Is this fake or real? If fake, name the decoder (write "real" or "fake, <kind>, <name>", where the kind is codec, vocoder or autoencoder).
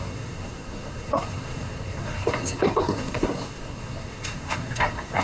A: fake, codec, SNAC